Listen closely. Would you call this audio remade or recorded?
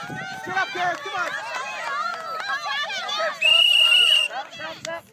recorded